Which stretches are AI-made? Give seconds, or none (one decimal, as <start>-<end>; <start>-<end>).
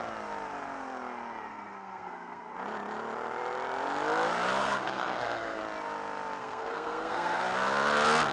1.5-2.5; 4.6-5.6; 6.4-7.4